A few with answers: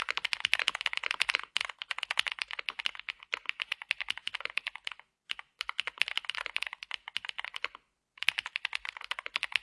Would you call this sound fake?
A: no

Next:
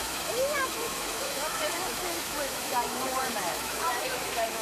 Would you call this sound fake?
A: yes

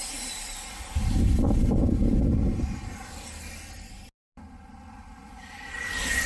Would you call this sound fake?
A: no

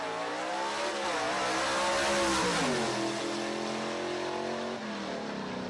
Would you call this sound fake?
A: no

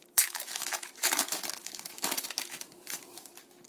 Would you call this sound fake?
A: yes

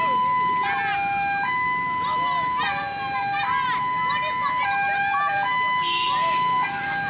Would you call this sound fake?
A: no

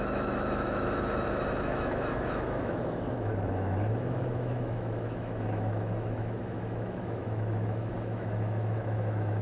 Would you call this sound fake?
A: yes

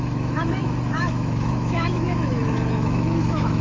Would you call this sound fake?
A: yes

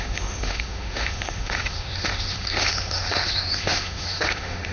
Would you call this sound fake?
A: yes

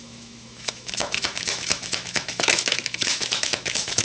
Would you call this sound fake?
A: yes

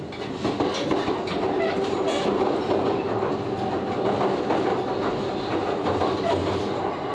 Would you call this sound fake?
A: no